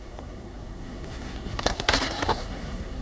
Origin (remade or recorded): remade